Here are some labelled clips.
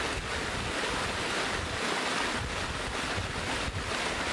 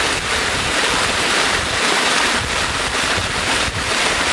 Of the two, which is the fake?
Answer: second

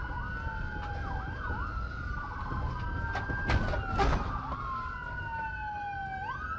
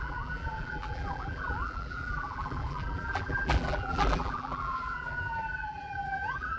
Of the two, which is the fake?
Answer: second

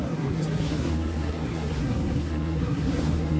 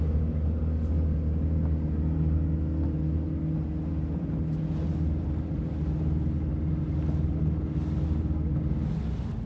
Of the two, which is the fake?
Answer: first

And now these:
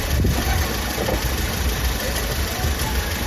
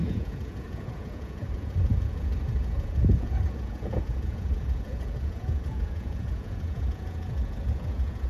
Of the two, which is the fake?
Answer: second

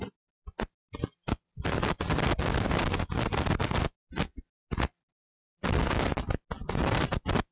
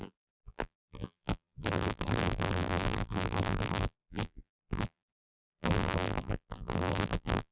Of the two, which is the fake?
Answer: second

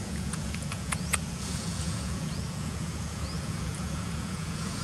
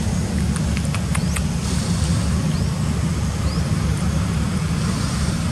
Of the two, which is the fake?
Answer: first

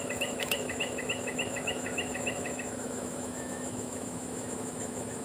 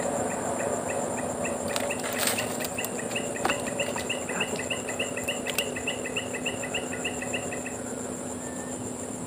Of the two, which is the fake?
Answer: first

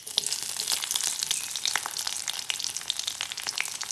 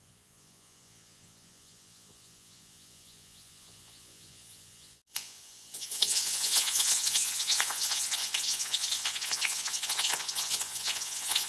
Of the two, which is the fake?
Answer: second